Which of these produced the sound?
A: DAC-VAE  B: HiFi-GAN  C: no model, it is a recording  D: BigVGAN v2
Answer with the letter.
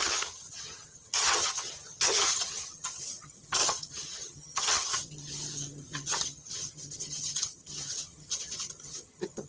B